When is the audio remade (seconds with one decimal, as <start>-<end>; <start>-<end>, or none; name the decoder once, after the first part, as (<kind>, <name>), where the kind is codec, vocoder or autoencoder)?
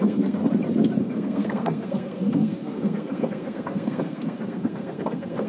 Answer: 0.0-0.4 (codec, SNAC); 1.0-5.5